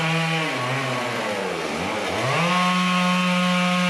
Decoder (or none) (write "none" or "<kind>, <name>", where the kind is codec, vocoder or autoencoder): none